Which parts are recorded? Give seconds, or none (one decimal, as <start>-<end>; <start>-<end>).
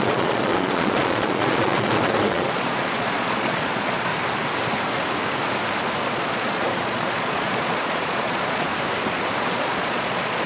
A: 4.1-6.1; 8.7-9.4